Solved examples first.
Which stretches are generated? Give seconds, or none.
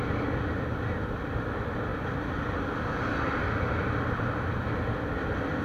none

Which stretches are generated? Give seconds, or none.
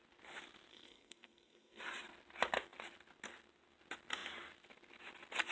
0.7-1.8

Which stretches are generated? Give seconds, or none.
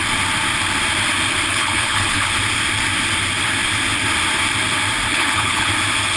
1.5-2.3; 5.1-5.7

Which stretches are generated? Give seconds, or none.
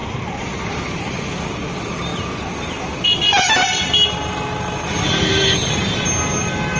none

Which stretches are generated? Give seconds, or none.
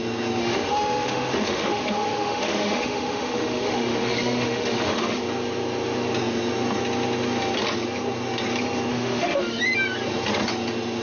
0.4-5.2; 8.9-9.6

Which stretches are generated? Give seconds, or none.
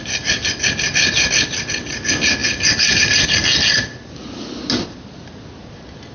none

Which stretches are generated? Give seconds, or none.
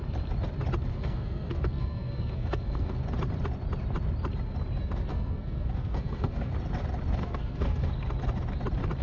0.9-3.0; 5.1-6.5; 7.2-7.9